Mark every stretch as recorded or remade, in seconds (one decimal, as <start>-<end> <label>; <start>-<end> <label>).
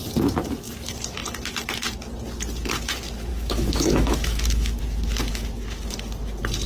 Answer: 0.0-3.3 recorded; 3.3-4.8 remade; 4.8-6.7 recorded